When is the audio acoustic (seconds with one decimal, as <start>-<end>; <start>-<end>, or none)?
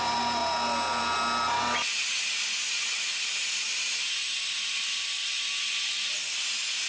0.0-6.9